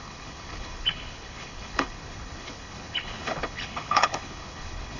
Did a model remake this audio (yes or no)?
yes